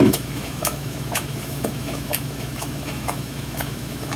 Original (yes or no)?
no